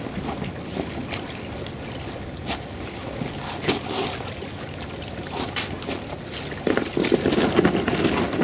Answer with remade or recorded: recorded